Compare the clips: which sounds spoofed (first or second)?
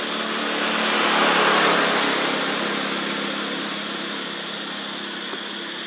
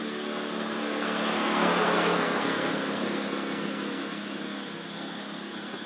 second